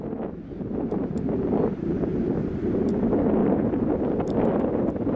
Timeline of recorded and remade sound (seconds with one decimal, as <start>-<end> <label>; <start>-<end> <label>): 0.0-3.4 recorded; 3.4-4.0 remade; 4.0-5.2 recorded